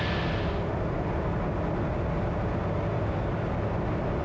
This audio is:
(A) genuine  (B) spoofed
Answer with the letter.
A